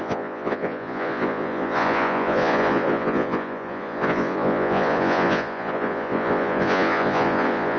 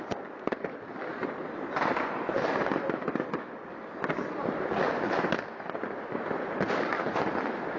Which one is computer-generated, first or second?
first